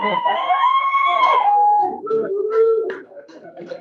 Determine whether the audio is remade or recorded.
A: remade